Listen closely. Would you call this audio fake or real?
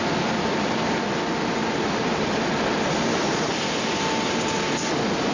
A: real